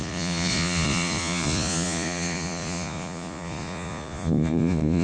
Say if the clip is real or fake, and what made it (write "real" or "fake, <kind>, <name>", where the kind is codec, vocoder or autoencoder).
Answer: fake, vocoder, Vocos